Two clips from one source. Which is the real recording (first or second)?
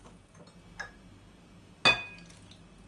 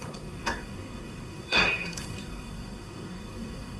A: first